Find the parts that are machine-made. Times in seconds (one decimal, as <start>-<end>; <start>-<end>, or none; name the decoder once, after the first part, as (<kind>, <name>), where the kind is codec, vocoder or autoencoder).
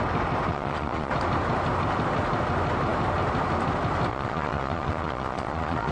0.5-1.1 (vocoder, Vocos); 4.1-5.9